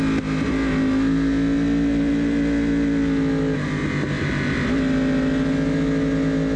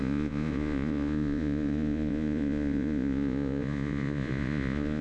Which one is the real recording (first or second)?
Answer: first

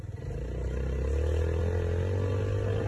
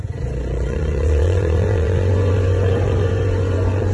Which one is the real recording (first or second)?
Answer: first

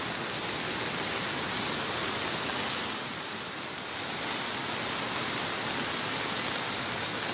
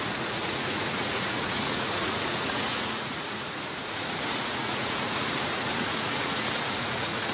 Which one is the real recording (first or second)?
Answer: first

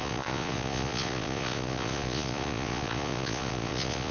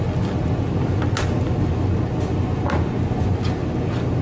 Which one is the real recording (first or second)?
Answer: second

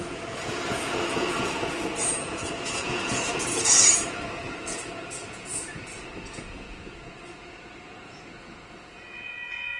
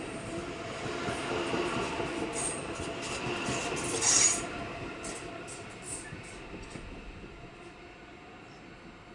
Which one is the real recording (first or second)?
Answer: second